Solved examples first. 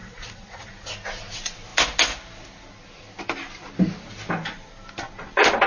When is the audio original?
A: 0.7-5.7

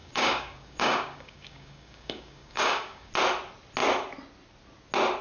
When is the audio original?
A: 3.1-5.2

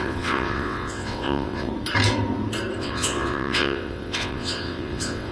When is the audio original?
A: 1.7-2.8

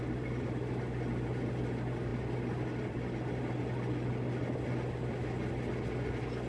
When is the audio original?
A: 0.0-6.5

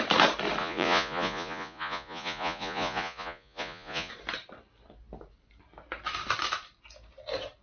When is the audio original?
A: 0.0-0.6; 4.1-7.6

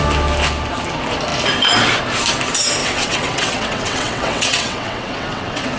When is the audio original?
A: 0.0-2.8